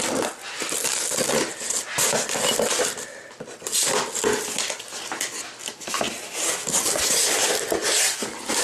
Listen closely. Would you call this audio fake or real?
real